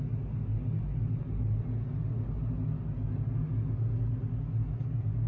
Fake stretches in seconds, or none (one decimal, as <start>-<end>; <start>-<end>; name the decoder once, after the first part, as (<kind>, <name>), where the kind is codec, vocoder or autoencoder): none